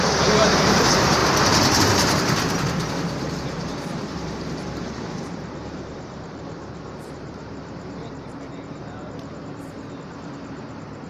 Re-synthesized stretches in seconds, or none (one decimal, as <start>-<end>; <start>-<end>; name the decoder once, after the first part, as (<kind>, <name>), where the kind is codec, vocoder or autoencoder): 0.0-1.2 (vocoder, BigVGAN v2); 1.8-11.1